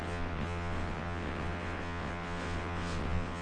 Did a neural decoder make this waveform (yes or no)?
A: yes